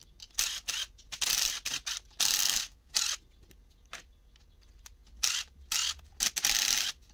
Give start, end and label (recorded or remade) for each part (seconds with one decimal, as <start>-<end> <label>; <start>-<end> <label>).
0.0-2.4 recorded; 2.4-2.9 remade; 2.9-7.1 recorded